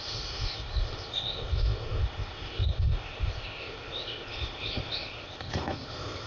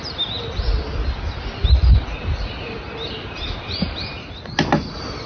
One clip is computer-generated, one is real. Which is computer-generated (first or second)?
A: first